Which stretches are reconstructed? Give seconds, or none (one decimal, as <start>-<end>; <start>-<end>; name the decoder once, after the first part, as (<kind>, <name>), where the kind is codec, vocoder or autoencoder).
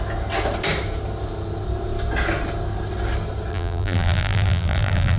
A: 3.5-5.2 (vocoder, BigVGAN v2)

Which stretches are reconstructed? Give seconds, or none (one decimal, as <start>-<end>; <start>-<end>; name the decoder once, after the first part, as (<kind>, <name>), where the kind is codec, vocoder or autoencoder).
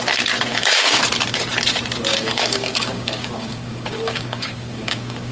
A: 0.5-1.0 (codec, DAC); 2.1-5.3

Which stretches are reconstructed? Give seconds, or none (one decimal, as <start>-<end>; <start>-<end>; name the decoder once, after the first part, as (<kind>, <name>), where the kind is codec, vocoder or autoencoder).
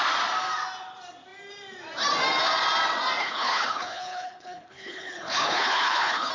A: 3.2-6.3 (codec, HILCodec)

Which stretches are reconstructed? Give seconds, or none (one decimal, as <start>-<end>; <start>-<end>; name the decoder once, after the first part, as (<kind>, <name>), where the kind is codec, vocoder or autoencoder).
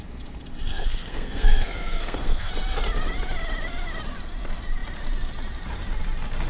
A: 0.7-2.5 (codec, SNAC)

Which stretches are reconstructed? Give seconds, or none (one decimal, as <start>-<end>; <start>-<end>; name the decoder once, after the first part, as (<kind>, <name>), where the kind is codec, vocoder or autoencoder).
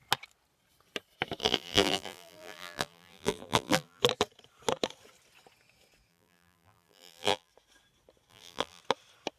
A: 1.4-4.0 (vocoder, BigVGAN v2); 6.1-7.5; 8.3-8.8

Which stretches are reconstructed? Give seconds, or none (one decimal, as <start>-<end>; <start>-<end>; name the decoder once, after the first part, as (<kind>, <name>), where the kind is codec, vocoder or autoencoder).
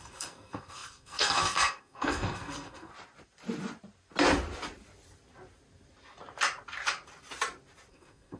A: 0.0-2.9 (codec, SNAC); 7.9-8.4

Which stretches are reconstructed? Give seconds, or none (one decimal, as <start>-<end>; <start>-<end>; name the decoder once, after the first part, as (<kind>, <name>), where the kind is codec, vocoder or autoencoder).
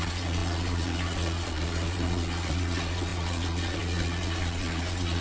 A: 0.0-5.2 (vocoder, Vocos)